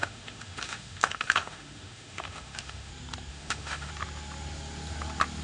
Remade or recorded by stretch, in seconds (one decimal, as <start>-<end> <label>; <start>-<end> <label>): 0.0-2.9 remade; 2.9-3.3 recorded; 3.3-3.9 remade; 3.9-5.4 recorded